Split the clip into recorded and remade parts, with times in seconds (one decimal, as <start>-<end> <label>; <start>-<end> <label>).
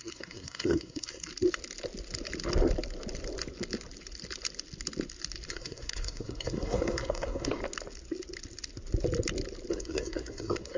0.0-1.3 remade; 1.3-5.5 recorded; 5.5-7.6 remade; 7.6-9.7 recorded; 9.7-10.8 remade